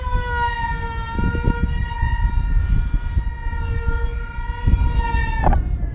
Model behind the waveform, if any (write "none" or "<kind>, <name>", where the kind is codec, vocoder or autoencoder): none